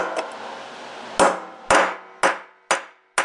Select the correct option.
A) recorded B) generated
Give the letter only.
A